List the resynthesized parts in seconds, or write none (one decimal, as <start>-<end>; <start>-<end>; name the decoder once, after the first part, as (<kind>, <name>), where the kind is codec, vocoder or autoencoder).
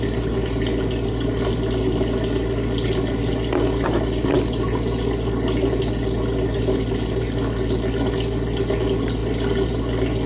none